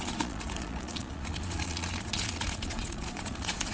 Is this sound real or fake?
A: fake